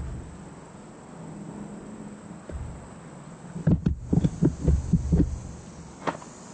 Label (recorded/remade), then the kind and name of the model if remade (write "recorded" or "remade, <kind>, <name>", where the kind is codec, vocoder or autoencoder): recorded